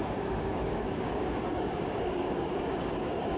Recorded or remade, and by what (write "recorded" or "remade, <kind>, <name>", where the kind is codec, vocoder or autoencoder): remade, codec, DAC